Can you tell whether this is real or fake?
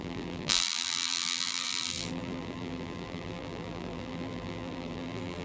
fake